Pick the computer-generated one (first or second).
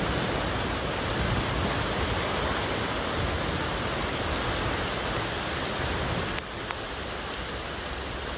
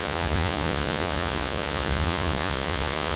second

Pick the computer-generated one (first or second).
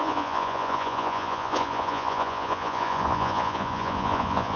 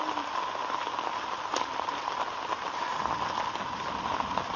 first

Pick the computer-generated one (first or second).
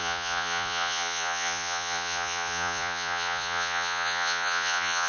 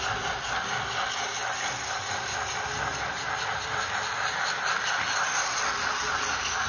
first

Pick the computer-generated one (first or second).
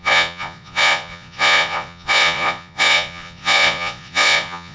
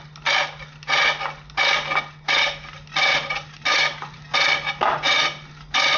first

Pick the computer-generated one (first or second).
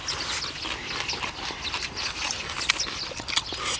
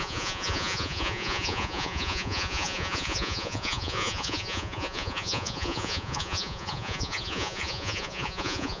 second